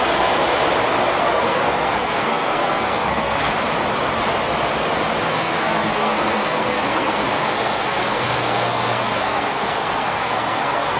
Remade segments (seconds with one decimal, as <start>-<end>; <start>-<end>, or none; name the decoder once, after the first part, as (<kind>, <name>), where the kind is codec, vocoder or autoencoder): 0.0-0.4 (codec, SNAC); 1.2-3.5; 5.3-11.0

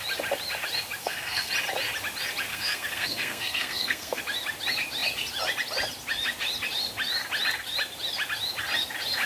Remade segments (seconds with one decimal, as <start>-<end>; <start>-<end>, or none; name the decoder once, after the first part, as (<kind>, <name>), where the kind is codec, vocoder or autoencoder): 1.0-1.5 (codec, SNAC); 2.5-4.2